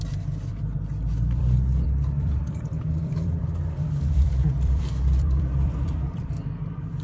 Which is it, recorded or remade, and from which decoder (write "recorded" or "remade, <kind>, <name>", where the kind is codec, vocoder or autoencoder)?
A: remade, vocoder, BigVGAN v2